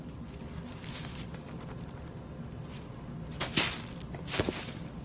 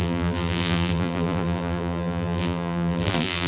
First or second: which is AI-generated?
second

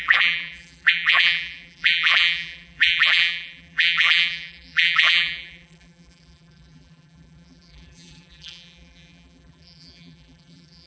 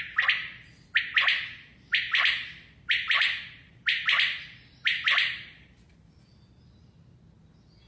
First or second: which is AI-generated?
first